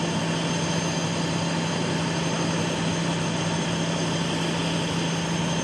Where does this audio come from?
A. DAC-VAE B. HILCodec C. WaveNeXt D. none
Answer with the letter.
D